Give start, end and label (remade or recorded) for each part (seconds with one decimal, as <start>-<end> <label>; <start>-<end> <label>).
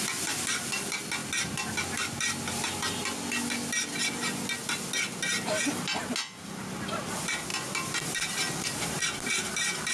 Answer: 0.0-9.9 recorded